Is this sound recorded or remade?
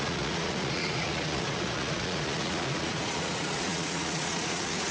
remade